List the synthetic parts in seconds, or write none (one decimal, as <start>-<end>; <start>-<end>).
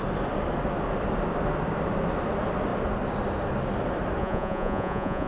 4.2-5.3